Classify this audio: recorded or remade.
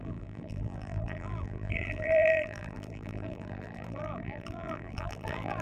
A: remade